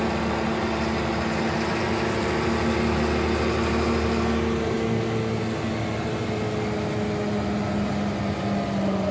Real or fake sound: real